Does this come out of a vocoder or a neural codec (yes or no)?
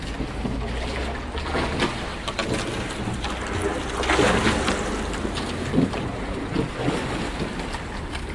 no